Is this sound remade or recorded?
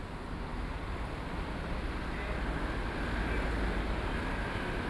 recorded